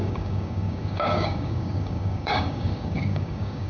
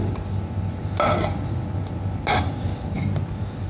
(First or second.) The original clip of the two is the second